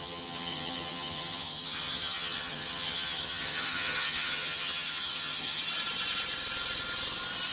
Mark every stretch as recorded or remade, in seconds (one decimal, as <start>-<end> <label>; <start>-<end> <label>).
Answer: 0.0-5.6 remade; 5.6-7.5 recorded